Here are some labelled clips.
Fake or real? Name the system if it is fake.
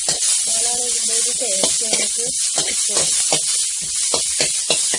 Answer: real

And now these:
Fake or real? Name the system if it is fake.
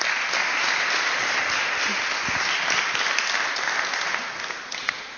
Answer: real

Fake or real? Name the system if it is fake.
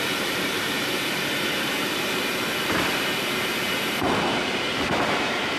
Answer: fake, vocoder, BigVGAN v2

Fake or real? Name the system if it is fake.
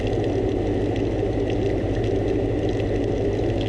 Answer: real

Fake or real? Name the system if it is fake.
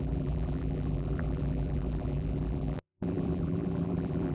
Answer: fake, vocoder, BigVGAN v2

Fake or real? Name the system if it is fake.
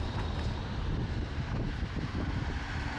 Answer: fake, vocoder, BigVGAN v2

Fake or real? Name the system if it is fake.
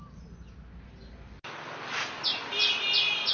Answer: real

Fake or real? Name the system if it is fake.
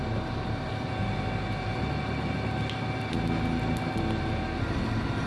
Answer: real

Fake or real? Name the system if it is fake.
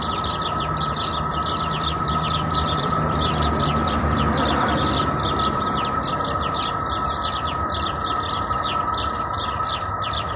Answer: fake, vocoder, BigVGAN v2